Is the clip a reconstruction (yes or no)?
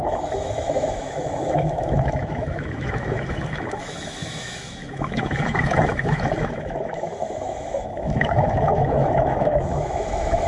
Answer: yes